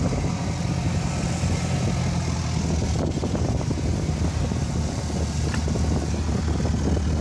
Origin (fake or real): real